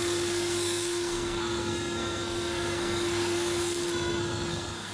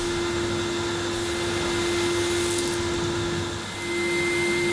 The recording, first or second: second